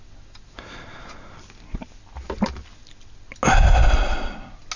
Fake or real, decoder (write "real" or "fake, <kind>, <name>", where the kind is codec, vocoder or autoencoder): real